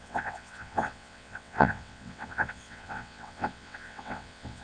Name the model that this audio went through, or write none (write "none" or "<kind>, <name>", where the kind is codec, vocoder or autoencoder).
vocoder, WaveNeXt